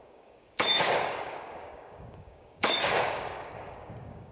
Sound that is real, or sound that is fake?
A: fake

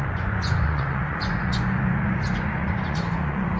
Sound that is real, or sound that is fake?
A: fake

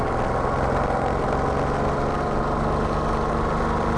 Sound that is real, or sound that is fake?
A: real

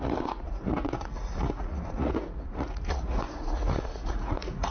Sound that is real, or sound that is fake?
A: fake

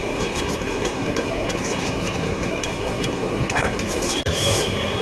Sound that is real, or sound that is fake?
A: fake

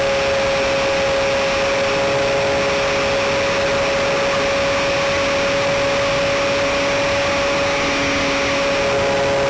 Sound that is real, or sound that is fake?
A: real